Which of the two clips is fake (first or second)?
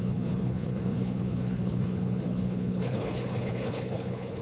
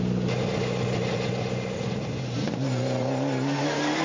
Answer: first